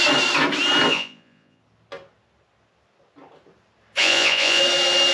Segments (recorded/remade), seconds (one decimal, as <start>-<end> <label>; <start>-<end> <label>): 0.0-0.9 recorded; 0.9-1.6 remade; 1.6-4.0 recorded; 4.0-4.6 remade; 4.6-5.1 recorded